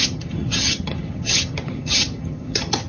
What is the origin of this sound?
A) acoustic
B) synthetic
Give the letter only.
B